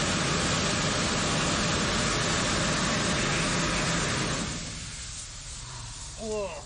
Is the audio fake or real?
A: real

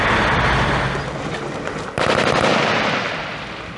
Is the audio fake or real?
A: real